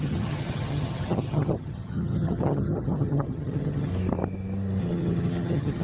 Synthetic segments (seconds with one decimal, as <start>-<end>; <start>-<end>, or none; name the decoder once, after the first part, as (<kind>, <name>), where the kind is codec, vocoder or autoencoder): 0.0-3.9 (vocoder, HiFi-GAN); 4.8-5.8